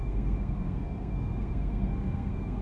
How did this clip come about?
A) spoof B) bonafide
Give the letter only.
A